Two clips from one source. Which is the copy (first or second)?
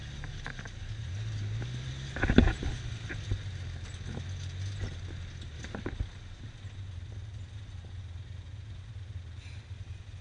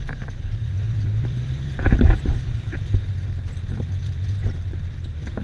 second